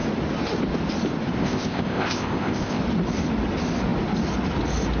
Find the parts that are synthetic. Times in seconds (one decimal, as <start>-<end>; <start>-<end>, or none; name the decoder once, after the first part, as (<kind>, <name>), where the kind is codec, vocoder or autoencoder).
1.4-2.8 (codec, ZipCodec)